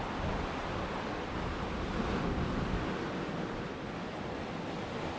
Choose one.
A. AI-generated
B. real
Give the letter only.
B